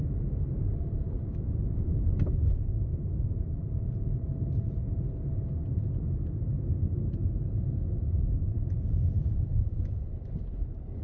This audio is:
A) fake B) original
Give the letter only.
A